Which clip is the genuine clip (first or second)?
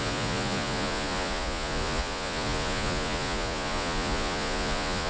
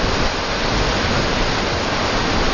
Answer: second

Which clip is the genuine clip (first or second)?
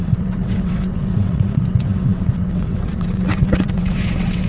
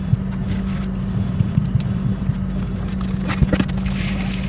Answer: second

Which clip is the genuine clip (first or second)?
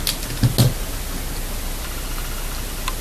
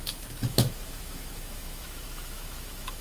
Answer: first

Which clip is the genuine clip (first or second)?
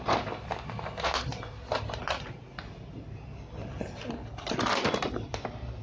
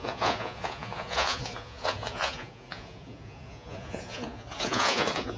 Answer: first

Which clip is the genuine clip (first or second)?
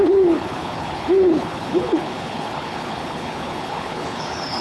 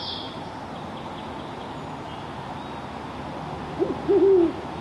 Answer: second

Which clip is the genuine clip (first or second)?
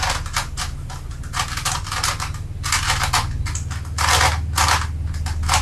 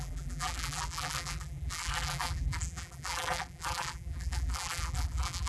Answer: first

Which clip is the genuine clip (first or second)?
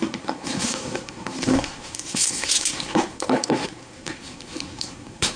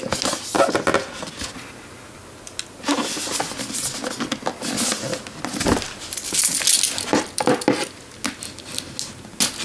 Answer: second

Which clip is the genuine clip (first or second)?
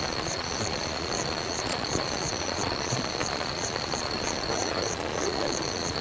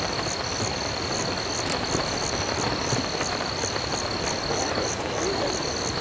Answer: second